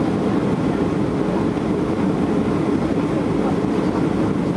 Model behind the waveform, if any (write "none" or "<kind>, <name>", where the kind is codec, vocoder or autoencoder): none